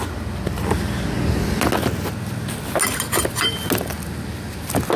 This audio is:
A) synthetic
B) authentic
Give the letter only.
B